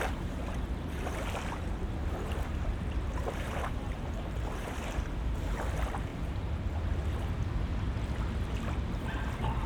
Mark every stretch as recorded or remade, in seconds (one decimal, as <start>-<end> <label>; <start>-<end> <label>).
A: 0.0-6.1 remade; 6.1-9.7 recorded